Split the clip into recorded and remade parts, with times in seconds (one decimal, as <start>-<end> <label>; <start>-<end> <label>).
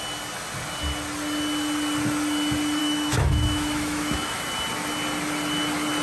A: 0.0-2.8 recorded; 2.8-4.4 remade; 4.4-6.0 recorded